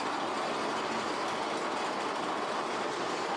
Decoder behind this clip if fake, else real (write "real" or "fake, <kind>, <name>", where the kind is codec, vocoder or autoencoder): real